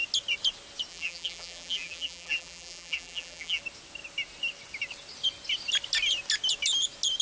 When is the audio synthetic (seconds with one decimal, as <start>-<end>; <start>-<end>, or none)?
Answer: 0.9-3.6